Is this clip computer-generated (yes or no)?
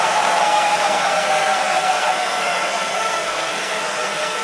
yes